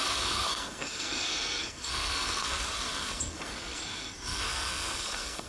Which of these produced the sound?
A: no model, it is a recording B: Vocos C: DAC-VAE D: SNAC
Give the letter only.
D